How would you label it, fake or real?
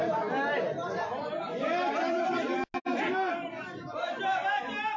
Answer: real